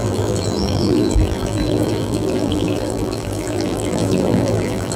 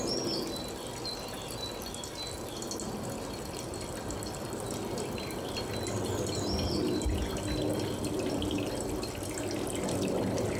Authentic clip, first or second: second